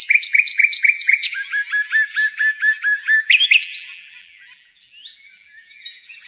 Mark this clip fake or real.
fake